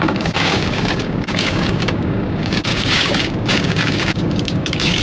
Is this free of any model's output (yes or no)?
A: no